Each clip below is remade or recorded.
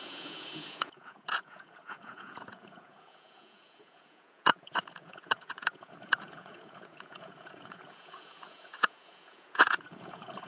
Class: remade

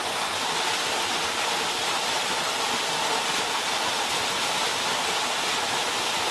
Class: recorded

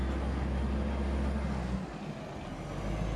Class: recorded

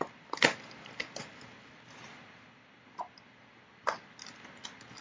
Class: recorded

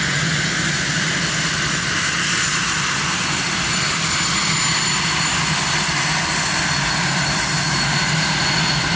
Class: recorded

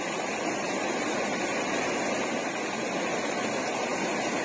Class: recorded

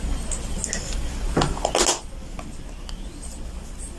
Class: recorded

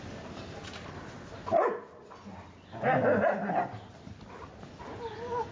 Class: recorded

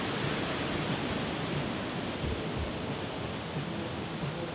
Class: recorded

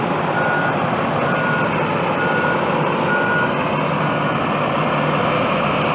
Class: recorded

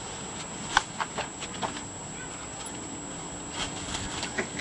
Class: recorded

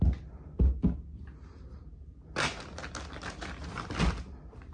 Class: recorded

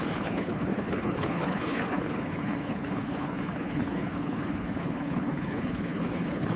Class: remade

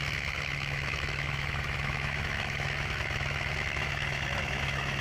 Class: remade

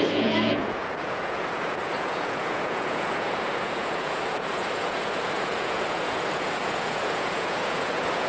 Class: remade